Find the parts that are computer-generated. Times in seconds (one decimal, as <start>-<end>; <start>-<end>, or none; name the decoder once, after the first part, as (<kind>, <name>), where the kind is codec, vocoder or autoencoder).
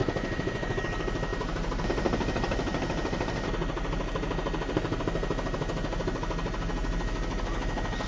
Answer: 0.0-0.8 (vocoder, Vocos)